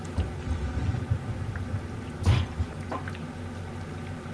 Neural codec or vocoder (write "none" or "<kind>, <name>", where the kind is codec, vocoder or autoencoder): none